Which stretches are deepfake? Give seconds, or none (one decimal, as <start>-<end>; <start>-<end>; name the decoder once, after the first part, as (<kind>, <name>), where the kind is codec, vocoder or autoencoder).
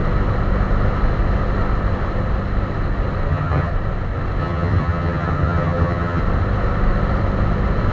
3.3-3.7 (vocoder, HiFi-GAN); 4.4-6.2